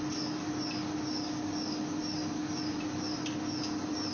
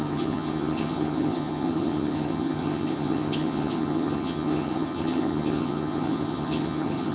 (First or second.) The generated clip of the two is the second